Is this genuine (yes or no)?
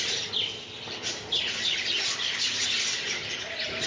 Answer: yes